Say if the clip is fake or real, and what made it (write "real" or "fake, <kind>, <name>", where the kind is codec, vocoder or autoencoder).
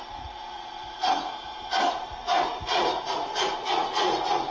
fake, vocoder, Vocos